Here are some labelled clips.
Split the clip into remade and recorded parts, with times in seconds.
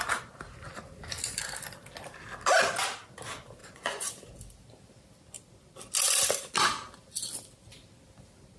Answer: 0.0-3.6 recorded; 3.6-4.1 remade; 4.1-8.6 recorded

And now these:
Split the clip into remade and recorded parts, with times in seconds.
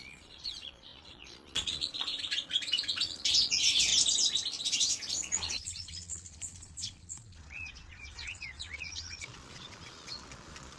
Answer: 0.0-3.9 remade; 3.9-4.6 recorded; 4.6-10.8 remade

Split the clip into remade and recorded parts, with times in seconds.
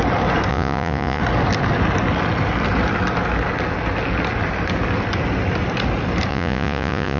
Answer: 0.0-0.5 recorded; 0.5-1.2 remade; 1.2-6.3 recorded; 6.3-7.2 remade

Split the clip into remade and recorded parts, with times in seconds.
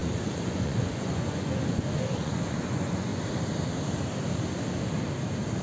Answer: 0.0-3.1 remade; 3.1-5.6 recorded